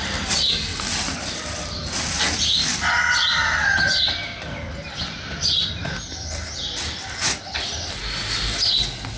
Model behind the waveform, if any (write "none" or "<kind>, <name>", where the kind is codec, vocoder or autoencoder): none